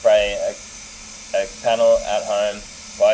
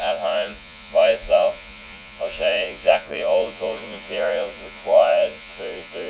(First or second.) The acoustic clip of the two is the first